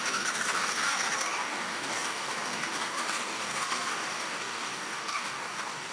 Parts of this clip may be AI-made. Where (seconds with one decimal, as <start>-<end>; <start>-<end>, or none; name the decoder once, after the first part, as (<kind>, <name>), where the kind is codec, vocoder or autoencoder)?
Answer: 0.0-5.9 (codec, DAC)